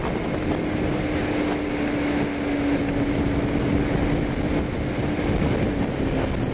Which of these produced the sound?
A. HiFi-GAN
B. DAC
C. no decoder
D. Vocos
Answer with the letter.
C